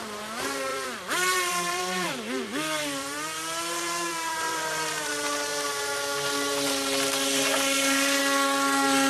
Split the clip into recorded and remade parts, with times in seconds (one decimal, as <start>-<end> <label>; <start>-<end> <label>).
0.0-0.7 recorded; 0.7-5.1 remade; 5.1-9.1 recorded